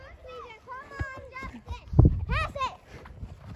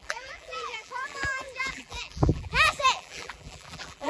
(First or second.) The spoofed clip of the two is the second